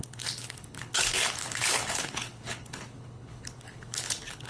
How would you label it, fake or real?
fake